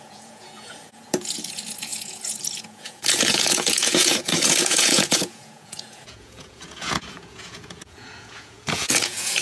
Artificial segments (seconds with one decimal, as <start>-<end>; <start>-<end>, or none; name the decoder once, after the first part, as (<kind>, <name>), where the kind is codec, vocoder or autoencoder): 0.0-9.4 (vocoder, Vocos)